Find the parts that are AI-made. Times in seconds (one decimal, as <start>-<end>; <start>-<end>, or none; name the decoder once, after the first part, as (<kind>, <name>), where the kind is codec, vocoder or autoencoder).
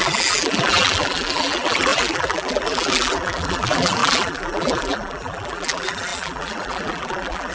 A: 0.0-7.5 (vocoder, BigVGAN v2)